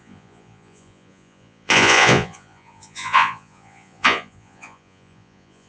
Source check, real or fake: fake